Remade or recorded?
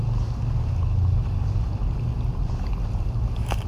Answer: recorded